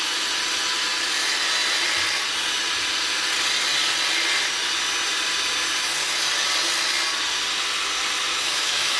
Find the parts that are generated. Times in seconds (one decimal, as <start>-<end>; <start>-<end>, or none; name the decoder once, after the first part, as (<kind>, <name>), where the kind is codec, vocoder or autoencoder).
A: 8.3-9.0 (autoencoder, DAC-VAE)